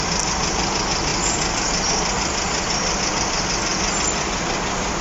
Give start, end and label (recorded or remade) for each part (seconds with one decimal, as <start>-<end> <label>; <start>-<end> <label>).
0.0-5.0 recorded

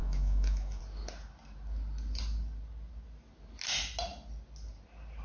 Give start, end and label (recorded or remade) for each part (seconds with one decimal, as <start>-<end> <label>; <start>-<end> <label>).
0.0-0.8 remade; 0.8-5.2 recorded

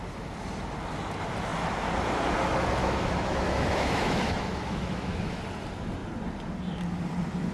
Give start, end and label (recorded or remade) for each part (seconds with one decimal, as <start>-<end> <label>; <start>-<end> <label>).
0.0-2.8 recorded; 2.8-5.4 remade; 5.4-7.5 recorded

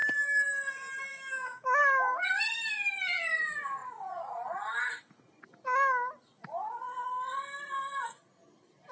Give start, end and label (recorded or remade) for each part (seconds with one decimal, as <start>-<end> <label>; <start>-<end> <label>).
0.0-1.1 recorded; 1.1-1.8 remade; 1.8-8.9 recorded

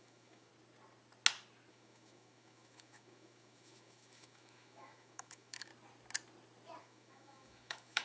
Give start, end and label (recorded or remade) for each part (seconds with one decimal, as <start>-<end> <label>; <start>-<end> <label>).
0.0-0.5 remade; 0.5-1.7 recorded; 1.7-5.7 remade; 5.7-6.8 recorded; 6.8-8.0 remade

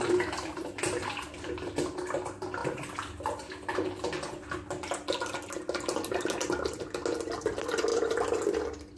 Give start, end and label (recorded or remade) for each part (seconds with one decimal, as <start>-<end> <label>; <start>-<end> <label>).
0.0-9.0 recorded

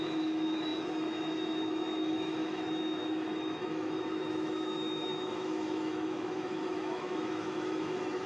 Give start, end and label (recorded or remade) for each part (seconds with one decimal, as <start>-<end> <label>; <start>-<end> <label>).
0.0-8.3 remade